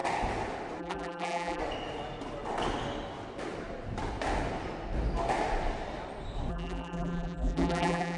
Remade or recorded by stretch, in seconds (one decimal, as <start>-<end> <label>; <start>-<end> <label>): 0.0-0.8 recorded; 0.8-1.6 remade; 1.6-6.5 recorded; 6.5-8.2 remade